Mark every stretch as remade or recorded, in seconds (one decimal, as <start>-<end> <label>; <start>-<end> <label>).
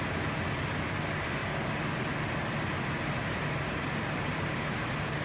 0.0-5.2 recorded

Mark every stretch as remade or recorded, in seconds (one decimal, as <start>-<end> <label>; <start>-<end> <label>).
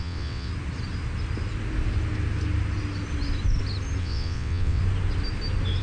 0.0-0.5 remade; 0.5-4.0 recorded; 4.0-4.8 remade; 4.8-5.8 recorded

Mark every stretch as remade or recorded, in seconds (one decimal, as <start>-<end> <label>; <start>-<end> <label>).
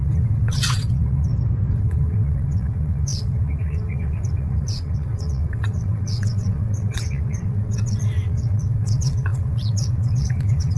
0.0-1.3 remade; 1.3-1.8 recorded; 1.8-10.8 remade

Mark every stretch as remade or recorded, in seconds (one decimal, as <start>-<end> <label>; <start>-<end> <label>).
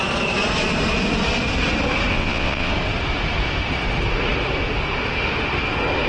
0.0-2.1 recorded; 2.1-2.7 remade; 2.7-6.1 recorded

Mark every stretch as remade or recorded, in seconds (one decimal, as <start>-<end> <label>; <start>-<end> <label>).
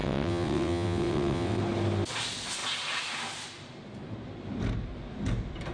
0.0-1.6 remade; 1.6-5.7 recorded